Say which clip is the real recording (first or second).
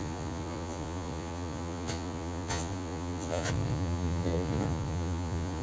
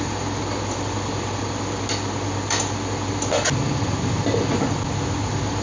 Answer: second